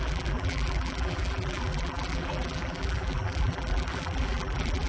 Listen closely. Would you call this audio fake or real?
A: fake